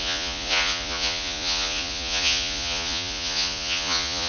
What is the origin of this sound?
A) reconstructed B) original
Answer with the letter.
A